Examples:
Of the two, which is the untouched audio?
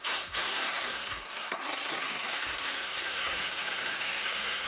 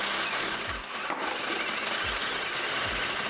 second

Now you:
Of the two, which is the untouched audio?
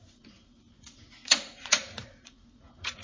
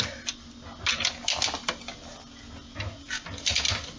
second